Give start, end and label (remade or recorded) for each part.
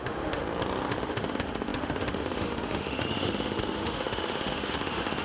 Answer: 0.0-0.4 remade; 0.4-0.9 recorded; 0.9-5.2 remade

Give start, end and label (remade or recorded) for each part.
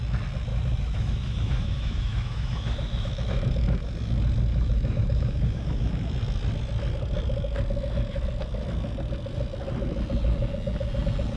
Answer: 0.0-0.5 recorded; 0.5-3.9 remade; 3.9-4.5 recorded; 4.5-6.1 remade; 6.1-11.4 recorded